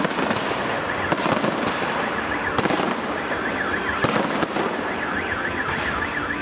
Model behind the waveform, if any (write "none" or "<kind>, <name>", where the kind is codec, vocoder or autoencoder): none